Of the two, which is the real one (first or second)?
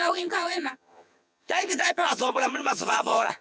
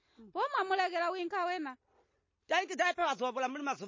second